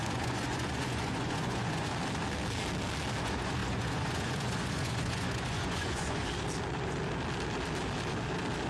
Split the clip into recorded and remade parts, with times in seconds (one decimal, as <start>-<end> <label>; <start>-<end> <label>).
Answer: 0.0-1.9 remade; 1.9-3.2 recorded; 3.2-6.2 remade; 6.2-8.7 recorded